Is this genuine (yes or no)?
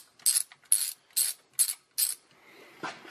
yes